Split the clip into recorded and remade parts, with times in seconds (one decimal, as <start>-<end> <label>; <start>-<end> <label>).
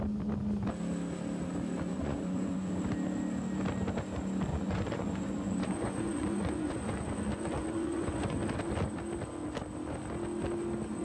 0.0-1.9 recorded; 1.9-2.8 remade; 2.8-4.5 recorded; 4.5-8.4 remade; 8.4-11.0 recorded